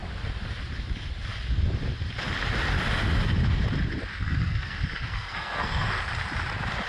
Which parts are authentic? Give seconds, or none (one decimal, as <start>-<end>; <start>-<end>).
0.0-4.1; 6.0-6.9